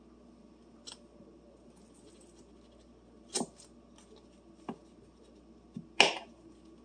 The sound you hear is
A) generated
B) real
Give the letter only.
B